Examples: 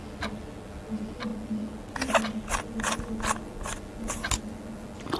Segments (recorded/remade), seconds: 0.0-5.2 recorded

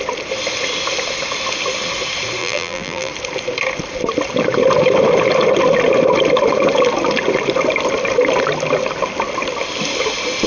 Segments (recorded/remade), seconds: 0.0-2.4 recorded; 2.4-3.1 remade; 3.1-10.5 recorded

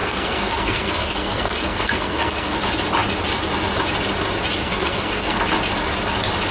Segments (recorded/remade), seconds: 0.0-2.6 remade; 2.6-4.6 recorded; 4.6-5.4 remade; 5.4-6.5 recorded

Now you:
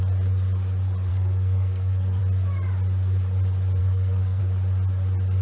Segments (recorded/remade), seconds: 0.0-1.1 recorded; 1.1-2.2 remade; 2.2-3.8 recorded; 3.8-4.4 remade; 4.4-5.4 recorded

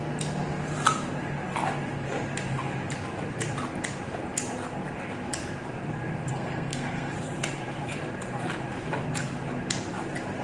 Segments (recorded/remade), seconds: 0.0-6.3 recorded; 6.3-7.1 remade; 7.1-10.4 recorded

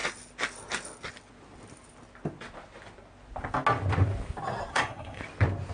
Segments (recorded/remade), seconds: 0.0-4.7 recorded; 4.7-5.2 remade; 5.2-5.7 recorded

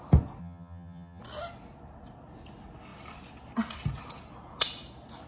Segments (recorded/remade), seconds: 0.0-0.4 recorded; 0.4-1.2 remade; 1.2-5.3 recorded

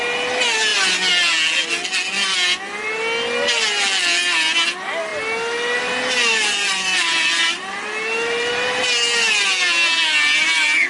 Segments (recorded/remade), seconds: 0.0-6.2 recorded; 6.2-8.8 remade; 8.8-10.9 recorded